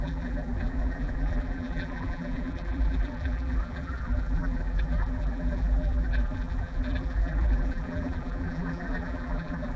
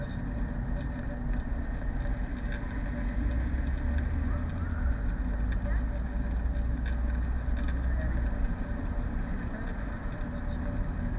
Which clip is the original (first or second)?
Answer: second